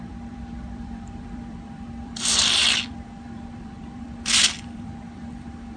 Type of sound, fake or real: fake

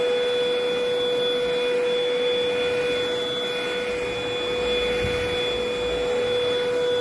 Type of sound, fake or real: real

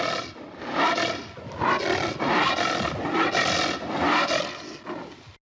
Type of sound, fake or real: real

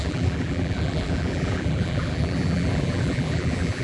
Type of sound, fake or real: fake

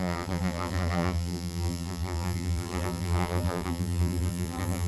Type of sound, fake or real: fake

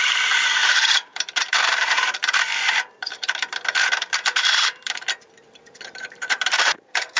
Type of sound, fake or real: fake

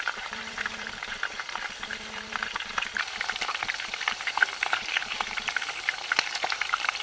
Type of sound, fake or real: fake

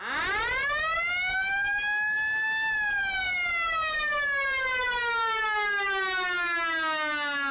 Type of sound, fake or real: real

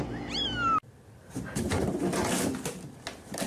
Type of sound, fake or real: real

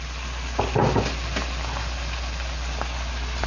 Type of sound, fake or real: real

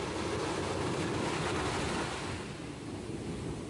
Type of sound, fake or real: real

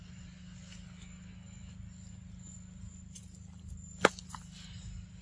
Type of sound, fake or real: real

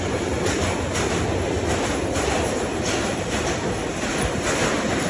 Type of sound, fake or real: real